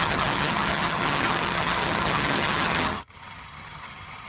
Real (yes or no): no